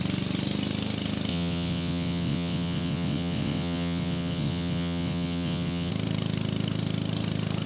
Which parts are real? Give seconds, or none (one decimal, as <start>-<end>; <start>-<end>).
0.0-1.3; 5.9-7.7